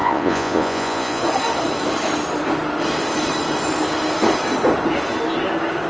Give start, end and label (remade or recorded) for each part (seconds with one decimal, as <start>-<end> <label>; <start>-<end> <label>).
0.0-1.2 remade; 1.2-5.9 recorded